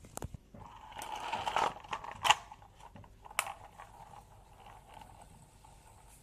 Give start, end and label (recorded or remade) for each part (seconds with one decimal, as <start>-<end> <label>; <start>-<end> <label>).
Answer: 0.0-6.2 recorded